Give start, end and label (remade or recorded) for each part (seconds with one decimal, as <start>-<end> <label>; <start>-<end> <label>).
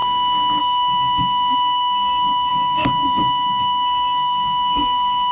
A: 0.0-0.6 recorded; 0.6-5.3 remade